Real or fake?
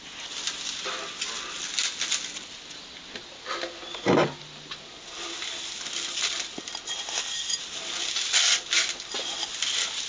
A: real